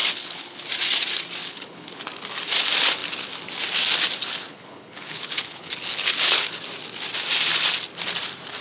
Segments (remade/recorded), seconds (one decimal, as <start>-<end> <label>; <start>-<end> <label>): 0.0-0.6 remade; 0.6-1.4 recorded; 1.4-2.0 remade; 2.0-4.5 recorded; 4.5-6.6 remade; 6.6-8.6 recorded